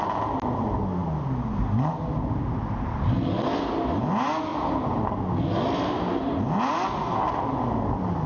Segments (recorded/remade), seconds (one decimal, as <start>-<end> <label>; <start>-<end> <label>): 0.0-8.3 recorded